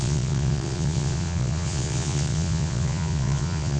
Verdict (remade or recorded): remade